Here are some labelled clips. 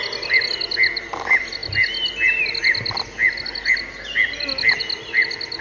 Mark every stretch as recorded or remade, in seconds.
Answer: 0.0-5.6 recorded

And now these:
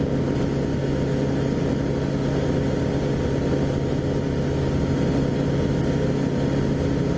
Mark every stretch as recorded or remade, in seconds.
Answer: 0.0-7.2 recorded

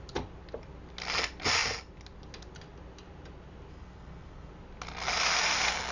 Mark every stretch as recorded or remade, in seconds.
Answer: 0.0-3.7 recorded; 3.7-4.5 remade; 4.5-5.9 recorded

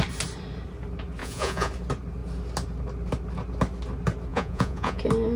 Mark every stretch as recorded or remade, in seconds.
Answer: 0.0-1.2 recorded; 1.2-1.7 remade; 1.7-4.3 recorded; 4.3-5.0 remade; 5.0-5.4 recorded

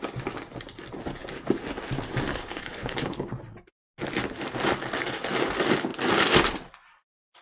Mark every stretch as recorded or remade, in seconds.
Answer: 0.0-2.3 recorded; 2.3-3.3 remade; 3.3-7.4 recorded